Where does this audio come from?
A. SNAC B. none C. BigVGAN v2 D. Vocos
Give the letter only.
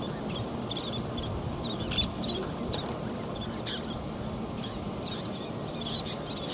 C